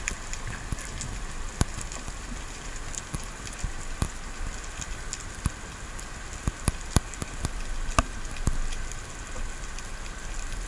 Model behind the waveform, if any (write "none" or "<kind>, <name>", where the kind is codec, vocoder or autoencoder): none